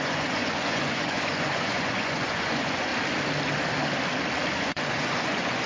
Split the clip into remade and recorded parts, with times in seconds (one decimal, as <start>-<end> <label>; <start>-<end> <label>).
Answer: 0.0-2.9 remade; 2.9-4.6 recorded; 4.6-5.7 remade